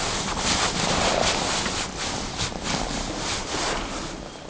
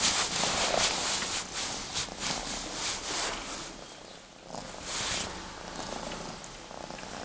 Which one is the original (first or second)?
second